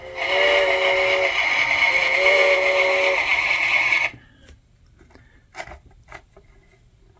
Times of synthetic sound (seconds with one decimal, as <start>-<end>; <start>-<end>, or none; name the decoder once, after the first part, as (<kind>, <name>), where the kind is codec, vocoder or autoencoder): 2.0-2.8 (vocoder, Vocos)